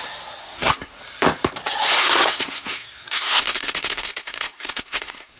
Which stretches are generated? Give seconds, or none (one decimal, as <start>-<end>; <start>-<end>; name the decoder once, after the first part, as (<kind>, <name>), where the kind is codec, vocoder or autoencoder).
0.4-1.0 (codec, SNAC); 2.0-5.4